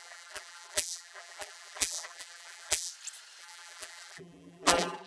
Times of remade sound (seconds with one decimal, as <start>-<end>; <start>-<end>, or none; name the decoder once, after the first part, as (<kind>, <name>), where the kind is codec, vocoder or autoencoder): 0.0-2.9 (vocoder, BigVGAN v2); 3.4-5.1